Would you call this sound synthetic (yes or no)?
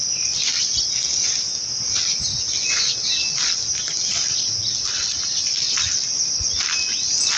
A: no